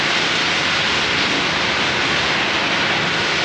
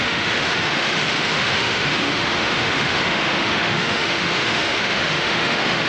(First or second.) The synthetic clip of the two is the second